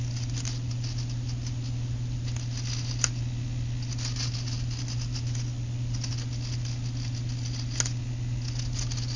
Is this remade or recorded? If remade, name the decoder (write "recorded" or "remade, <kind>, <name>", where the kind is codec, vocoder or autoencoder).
recorded